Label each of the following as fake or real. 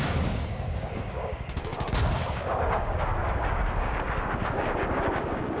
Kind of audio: fake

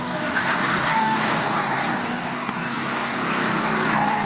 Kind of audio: fake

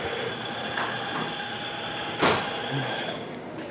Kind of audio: real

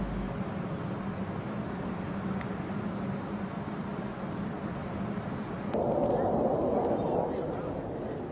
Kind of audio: real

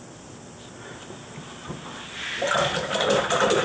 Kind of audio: real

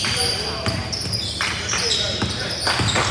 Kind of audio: real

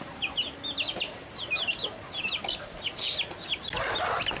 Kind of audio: real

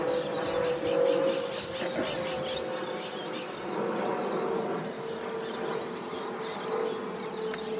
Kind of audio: real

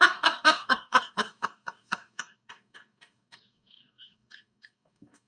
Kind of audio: fake